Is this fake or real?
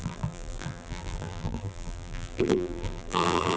fake